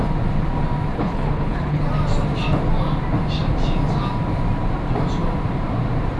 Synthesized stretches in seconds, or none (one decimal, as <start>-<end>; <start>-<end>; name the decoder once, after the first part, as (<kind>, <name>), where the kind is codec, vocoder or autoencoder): 0.9-1.8 (codec, HILCodec)